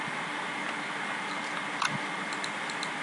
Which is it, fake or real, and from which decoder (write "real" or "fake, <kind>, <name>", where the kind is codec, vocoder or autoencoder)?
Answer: real